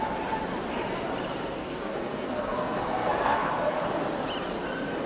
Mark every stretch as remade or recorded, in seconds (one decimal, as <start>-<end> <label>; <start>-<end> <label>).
0.0-1.6 recorded; 1.6-3.5 remade; 3.5-5.1 recorded